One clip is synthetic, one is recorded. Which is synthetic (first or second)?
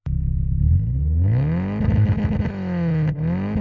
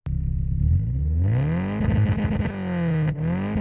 first